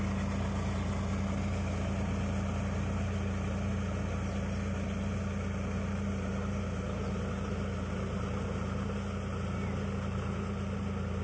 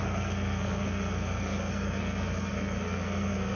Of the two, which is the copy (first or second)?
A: second